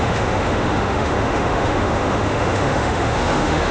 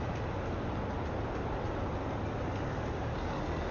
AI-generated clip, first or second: first